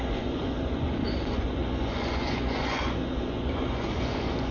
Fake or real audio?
fake